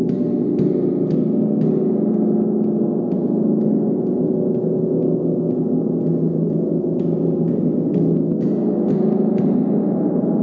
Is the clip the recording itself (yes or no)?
yes